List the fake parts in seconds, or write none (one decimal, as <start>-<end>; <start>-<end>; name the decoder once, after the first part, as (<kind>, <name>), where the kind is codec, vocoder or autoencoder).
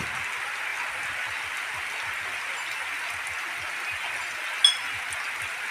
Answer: none